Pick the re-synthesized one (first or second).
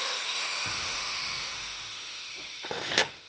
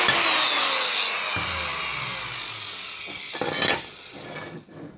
first